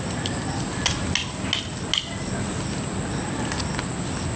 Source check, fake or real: real